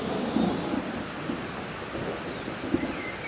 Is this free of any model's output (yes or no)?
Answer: yes